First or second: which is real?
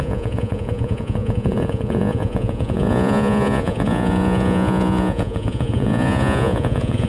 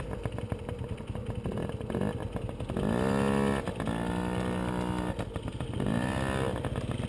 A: second